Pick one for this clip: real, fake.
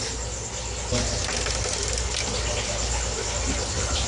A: real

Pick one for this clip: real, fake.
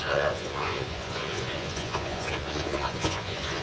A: fake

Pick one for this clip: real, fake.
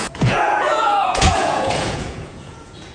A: fake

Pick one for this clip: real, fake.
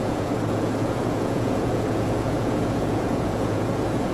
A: fake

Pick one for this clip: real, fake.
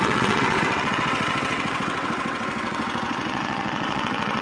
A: fake